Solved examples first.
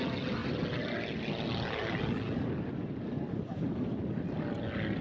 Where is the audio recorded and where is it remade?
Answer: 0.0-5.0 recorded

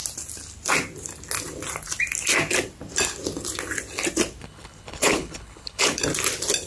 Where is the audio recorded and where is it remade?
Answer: 0.0-4.4 recorded; 4.4-6.0 remade; 6.0-6.7 recorded

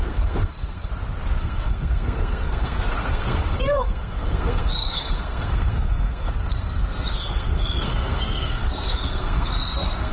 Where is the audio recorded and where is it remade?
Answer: 0.0-0.9 remade; 0.9-1.4 recorded; 1.4-10.1 remade

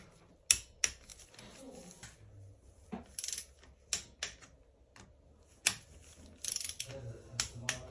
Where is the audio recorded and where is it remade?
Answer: 0.0-7.9 recorded

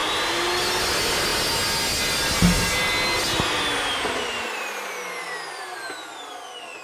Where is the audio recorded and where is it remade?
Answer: 0.0-6.8 recorded